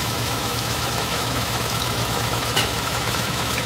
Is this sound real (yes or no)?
no